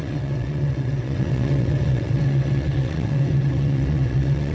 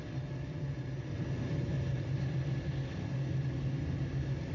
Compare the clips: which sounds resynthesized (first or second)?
first